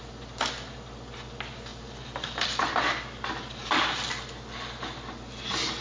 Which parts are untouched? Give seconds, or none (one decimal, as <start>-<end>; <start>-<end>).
0.0-5.8